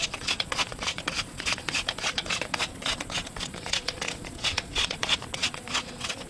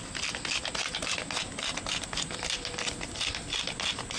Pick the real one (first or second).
second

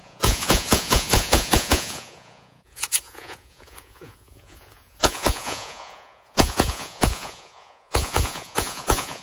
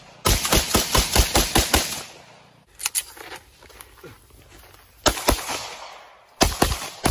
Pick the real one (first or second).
second